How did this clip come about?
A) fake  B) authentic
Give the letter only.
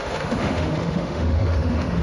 A